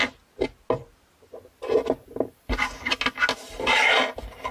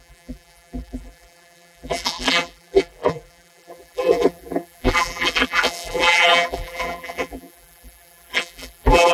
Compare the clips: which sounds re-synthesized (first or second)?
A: second